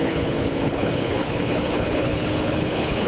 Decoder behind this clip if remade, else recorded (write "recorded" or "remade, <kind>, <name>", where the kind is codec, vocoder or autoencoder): remade, codec, HILCodec